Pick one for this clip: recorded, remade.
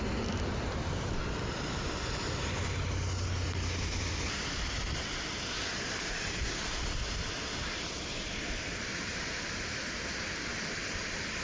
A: recorded